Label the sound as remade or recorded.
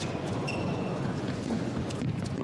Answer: remade